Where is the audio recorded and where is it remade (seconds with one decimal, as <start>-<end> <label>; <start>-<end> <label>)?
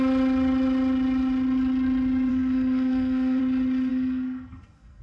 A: 0.0-2.3 recorded; 2.3-3.4 remade; 3.4-3.9 recorded; 3.9-5.0 remade